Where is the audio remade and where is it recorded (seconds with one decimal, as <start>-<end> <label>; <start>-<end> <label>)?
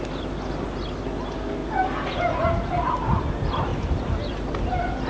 0.0-5.1 recorded